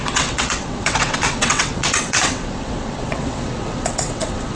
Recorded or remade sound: remade